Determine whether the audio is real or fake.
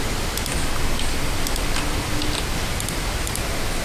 real